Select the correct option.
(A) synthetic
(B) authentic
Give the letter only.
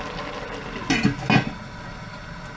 B